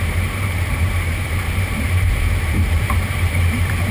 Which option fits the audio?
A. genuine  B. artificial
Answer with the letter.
B